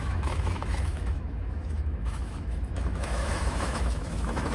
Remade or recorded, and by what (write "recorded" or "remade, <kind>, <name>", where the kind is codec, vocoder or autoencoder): remade, autoencoder, DAC-VAE